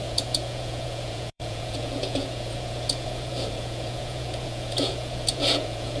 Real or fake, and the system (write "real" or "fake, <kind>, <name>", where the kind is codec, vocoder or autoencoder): fake, vocoder, Vocos